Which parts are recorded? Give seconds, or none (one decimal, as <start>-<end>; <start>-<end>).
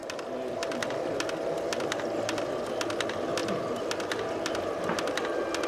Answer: 0.0-5.7